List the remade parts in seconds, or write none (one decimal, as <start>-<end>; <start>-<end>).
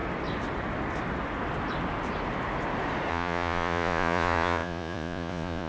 3.1-5.7